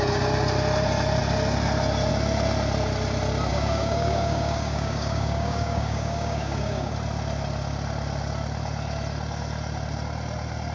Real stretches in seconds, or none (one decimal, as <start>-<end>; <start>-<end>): 0.0-3.5; 6.9-10.7